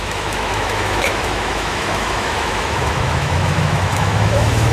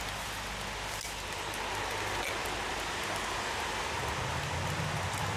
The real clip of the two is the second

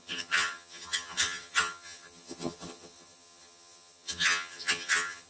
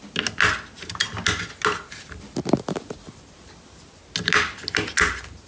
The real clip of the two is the second